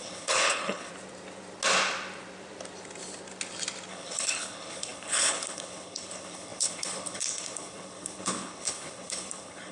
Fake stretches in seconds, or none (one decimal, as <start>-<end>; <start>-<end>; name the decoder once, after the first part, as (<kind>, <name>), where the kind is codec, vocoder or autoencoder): 0.0-0.9 (codec, HILCodec); 3.9-9.7